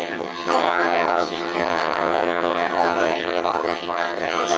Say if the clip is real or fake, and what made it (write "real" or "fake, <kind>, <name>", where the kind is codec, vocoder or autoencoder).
fake, vocoder, HiFi-GAN